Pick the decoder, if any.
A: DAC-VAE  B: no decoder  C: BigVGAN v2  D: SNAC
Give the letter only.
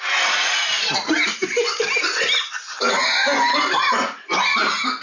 B